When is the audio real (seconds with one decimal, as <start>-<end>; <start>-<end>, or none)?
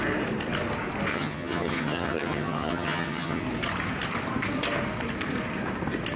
0.0-1.1; 3.4-6.2